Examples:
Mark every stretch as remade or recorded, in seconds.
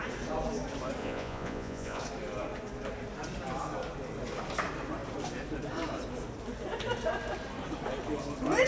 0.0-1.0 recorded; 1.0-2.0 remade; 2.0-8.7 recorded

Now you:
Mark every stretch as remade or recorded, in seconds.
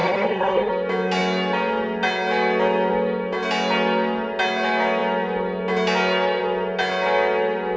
0.0-0.7 remade; 0.7-7.8 recorded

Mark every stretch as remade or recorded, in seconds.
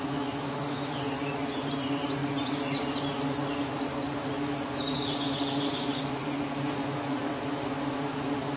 0.0-1.0 remade; 1.0-8.6 recorded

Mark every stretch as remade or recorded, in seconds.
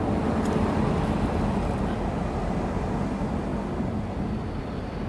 0.0-5.1 recorded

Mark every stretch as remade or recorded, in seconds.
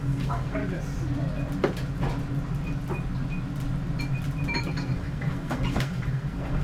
0.0-0.6 remade; 0.6-4.6 recorded; 4.6-6.6 remade